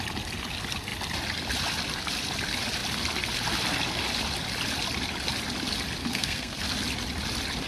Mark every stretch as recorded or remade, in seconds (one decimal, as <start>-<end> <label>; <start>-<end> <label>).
0.0-6.0 recorded; 6.0-6.6 remade; 6.6-7.7 recorded